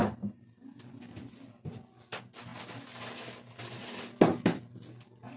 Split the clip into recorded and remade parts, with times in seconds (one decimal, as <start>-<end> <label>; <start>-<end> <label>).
0.0-5.4 recorded